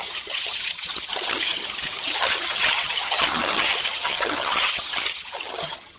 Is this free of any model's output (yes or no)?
no